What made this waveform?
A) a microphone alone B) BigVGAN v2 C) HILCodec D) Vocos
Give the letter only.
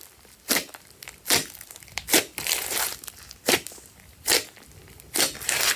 A